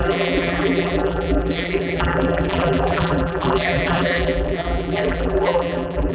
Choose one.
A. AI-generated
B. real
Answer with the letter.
A